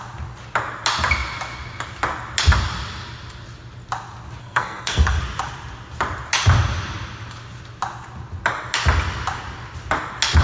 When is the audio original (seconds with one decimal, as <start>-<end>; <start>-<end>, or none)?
0.0-4.4; 5.2-10.4